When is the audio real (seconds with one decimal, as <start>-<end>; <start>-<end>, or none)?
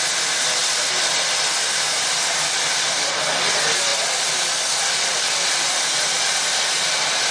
0.0-3.9; 6.2-7.3